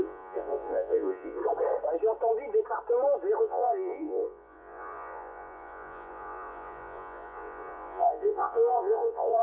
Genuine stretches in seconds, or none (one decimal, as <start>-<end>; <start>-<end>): 1.4-3.4